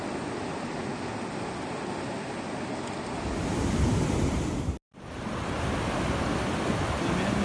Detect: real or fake real